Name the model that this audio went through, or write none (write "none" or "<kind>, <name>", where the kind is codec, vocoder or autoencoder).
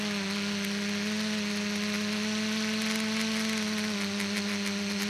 none